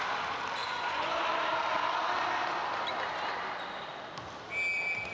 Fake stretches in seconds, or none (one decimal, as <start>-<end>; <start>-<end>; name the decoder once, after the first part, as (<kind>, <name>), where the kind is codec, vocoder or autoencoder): 0.6-1.2 (vocoder, Vocos)